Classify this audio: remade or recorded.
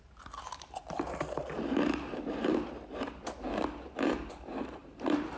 remade